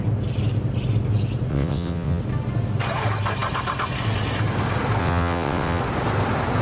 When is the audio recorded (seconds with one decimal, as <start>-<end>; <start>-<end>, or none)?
0.0-1.5; 2.2-5.0; 5.8-6.6